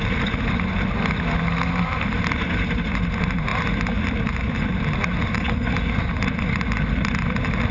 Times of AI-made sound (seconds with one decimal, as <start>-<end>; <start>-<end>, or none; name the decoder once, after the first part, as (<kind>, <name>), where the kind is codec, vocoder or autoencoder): none